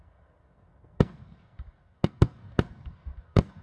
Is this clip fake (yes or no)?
yes